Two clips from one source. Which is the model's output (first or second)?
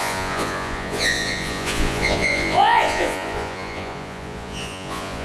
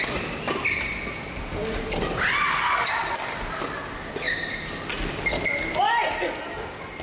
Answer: first